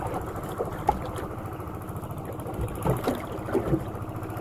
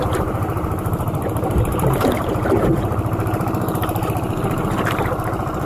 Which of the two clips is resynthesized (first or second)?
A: second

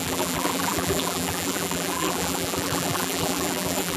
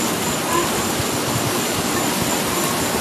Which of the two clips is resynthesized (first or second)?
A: first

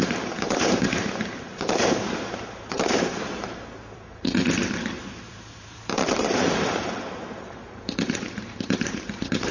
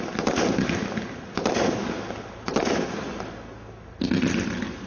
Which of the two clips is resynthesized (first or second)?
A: first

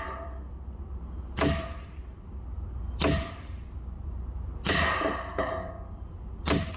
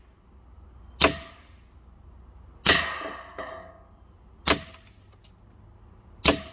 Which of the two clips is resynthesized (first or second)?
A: first